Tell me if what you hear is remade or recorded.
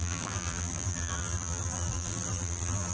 remade